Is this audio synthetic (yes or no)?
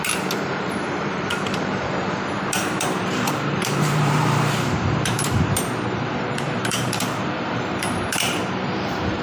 yes